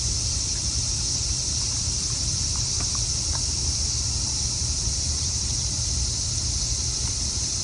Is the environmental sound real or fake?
fake